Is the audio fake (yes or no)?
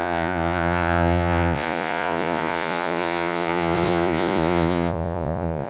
yes